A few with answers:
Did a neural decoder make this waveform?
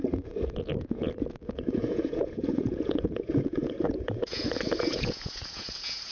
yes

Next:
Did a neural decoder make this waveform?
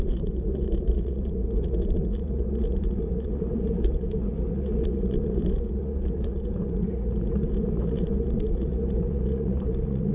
yes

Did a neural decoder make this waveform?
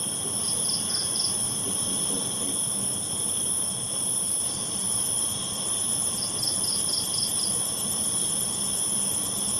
no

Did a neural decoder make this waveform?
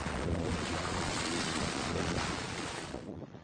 yes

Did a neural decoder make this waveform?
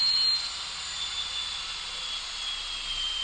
no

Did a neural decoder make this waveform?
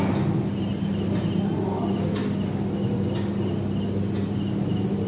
no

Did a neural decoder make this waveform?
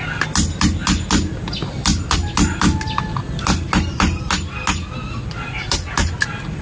no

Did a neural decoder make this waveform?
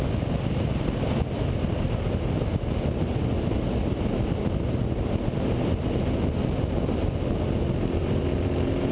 no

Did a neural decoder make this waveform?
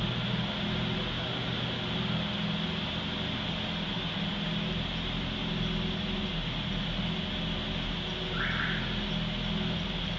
no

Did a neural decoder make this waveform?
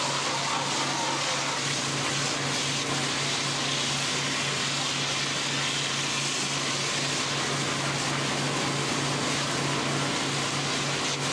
no